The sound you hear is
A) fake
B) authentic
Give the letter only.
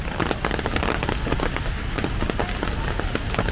B